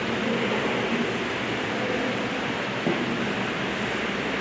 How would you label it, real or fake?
real